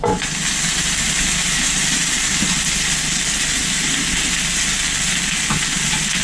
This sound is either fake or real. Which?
real